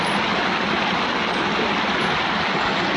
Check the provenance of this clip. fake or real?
real